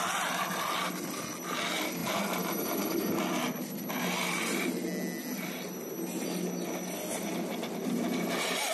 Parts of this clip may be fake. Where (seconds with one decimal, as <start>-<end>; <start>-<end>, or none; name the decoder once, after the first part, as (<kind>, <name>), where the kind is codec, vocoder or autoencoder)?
none